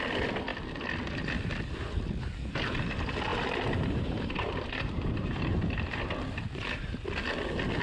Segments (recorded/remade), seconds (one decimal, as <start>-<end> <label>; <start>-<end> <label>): 0.0-3.3 recorded; 3.3-7.1 remade; 7.1-7.8 recorded